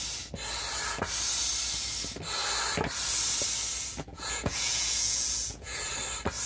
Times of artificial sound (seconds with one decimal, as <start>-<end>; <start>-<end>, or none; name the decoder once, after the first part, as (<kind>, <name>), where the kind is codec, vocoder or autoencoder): 4.1-5.9 (vocoder, Vocos)